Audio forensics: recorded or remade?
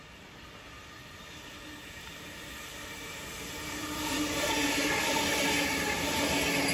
recorded